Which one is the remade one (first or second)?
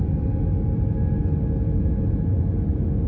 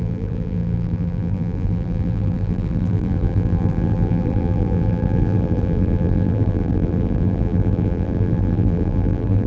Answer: second